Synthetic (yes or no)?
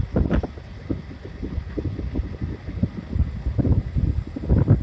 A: no